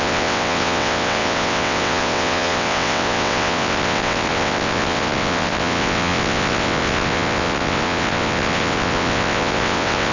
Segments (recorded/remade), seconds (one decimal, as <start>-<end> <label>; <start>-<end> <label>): 0.0-10.1 remade